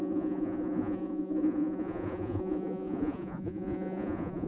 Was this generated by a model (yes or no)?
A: yes